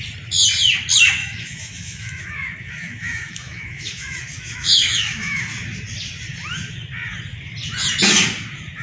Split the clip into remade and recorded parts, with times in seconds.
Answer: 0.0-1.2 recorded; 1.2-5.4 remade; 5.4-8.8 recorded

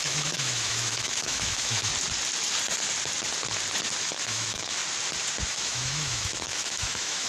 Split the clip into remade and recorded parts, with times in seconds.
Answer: 0.0-1.9 remade; 1.9-4.0 recorded; 4.0-4.8 remade; 4.8-5.5 recorded; 5.5-7.3 remade